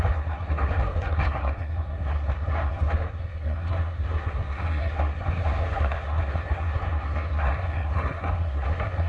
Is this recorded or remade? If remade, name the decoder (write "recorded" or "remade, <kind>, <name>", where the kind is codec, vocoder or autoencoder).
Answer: remade, codec, SNAC